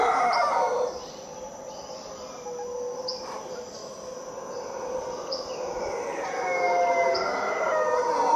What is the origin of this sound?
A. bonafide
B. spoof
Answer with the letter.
A